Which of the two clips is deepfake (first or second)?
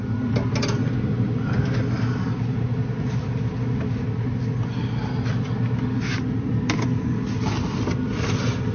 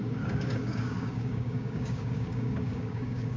second